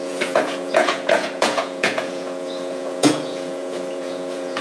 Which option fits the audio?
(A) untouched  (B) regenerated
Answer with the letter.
B